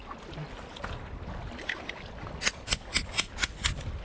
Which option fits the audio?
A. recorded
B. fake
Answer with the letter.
A